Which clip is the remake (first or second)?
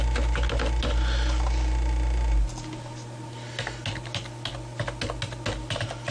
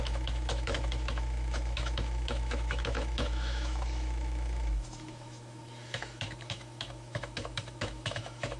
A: second